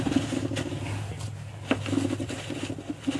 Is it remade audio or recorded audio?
recorded